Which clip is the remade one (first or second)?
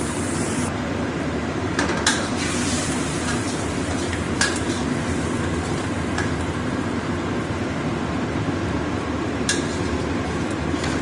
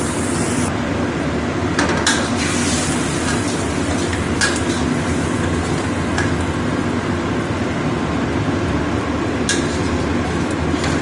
first